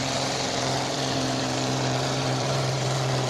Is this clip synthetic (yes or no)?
yes